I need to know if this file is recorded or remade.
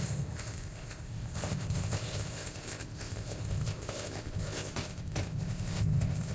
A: remade